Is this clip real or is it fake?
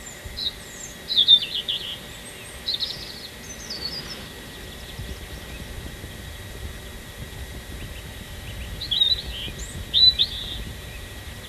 fake